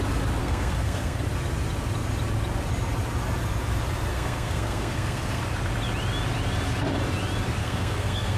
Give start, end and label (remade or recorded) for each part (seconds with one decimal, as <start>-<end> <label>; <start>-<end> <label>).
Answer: 0.0-0.4 recorded; 0.4-1.2 remade; 1.2-4.1 recorded; 4.1-5.4 remade; 5.4-7.6 recorded; 7.6-8.4 remade

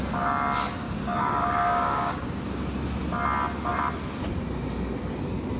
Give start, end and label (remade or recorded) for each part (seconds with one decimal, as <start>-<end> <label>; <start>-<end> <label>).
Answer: 0.0-0.8 recorded; 0.8-2.4 remade; 2.4-5.6 recorded

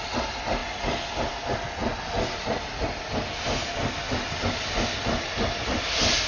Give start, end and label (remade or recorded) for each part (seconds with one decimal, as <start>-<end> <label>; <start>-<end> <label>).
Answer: 0.0-6.3 recorded